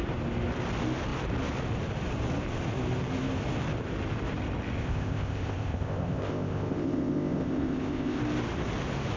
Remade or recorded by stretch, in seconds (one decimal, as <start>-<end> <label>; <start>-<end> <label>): 0.0-4.8 recorded; 4.8-8.2 remade; 8.2-9.2 recorded